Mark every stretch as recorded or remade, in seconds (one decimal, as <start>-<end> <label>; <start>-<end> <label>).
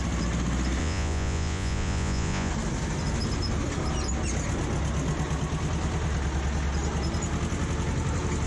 0.0-0.8 recorded; 0.8-2.5 remade; 2.5-8.5 recorded